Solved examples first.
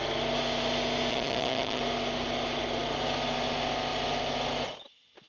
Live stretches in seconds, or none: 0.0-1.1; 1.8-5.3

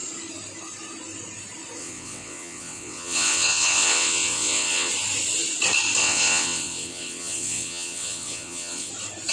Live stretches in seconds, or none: 0.0-1.8; 4.9-6.0; 8.9-9.3

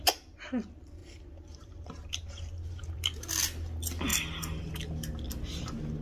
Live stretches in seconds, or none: 0.0-1.0; 3.3-6.0

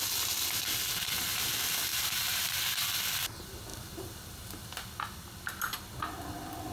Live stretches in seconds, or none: 0.0-1.9; 2.6-3.7; 4.4-6.7

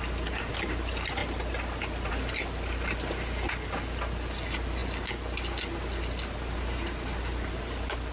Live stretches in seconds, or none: 0.0-8.1

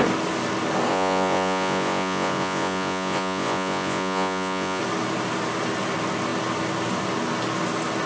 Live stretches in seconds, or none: 0.0-0.9; 4.8-8.1